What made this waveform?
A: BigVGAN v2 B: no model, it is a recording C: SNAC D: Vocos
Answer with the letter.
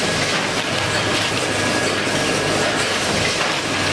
B